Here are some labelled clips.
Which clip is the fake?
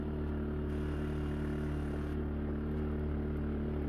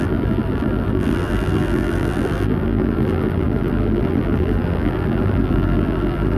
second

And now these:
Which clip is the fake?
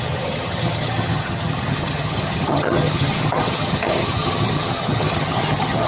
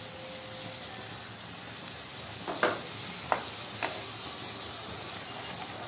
first